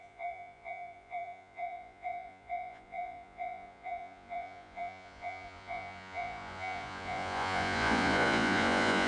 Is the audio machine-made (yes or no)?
yes